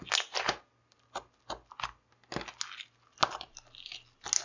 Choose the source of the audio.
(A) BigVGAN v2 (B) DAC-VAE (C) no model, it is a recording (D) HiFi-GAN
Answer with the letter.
C